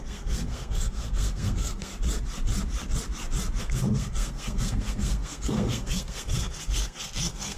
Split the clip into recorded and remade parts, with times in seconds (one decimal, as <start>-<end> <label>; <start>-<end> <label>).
0.0-1.9 remade; 1.9-3.6 recorded; 3.6-7.6 remade